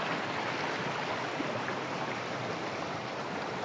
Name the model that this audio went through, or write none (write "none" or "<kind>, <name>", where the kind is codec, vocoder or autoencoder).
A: none